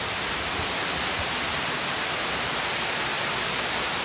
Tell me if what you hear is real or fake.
real